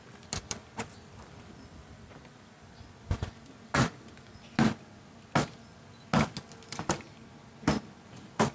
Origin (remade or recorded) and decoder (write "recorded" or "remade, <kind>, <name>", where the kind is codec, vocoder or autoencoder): recorded